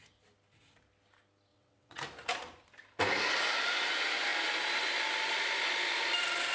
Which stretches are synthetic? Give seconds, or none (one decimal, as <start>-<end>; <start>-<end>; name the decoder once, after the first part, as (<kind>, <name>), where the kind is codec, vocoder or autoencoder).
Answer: 1.5-2.0 (vocoder, WaveNeXt)